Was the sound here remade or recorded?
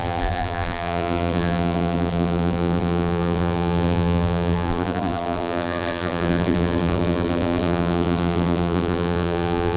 remade